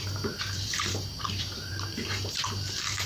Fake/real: fake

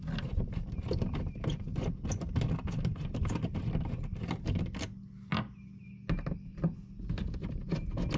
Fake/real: real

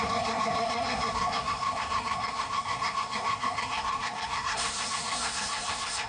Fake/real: fake